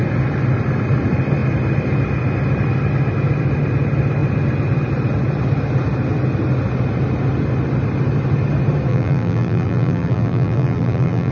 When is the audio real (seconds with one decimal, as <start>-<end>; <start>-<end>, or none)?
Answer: 0.0-8.9